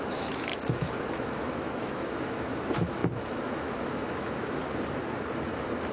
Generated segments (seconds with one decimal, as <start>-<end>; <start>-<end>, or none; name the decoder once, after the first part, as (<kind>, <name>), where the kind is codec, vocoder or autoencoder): 0.0-4.6 (autoencoder, DAC-VAE)